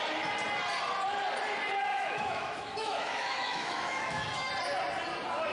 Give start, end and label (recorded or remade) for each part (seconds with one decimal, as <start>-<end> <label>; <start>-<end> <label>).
0.0-1.9 recorded; 1.9-4.5 remade; 4.5-5.5 recorded